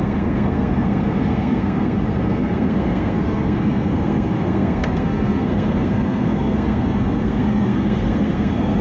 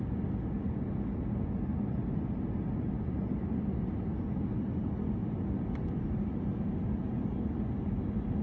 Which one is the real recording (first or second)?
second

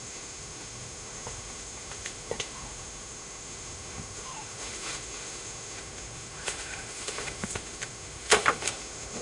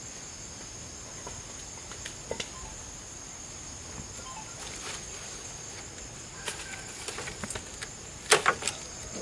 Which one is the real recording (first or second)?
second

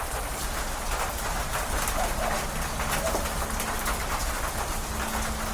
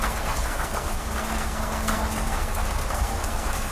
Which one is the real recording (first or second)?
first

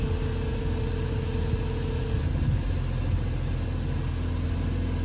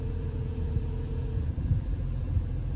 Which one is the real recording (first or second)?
first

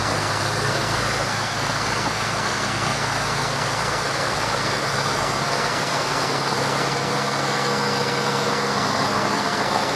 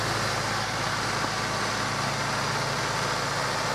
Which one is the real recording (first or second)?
second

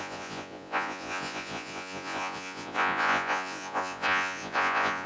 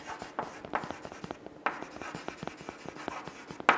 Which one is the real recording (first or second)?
second